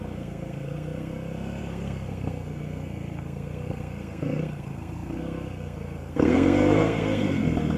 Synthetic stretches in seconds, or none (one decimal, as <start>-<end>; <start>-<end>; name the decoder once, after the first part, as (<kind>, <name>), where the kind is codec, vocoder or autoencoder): 0.0-7.8 (codec, SNAC)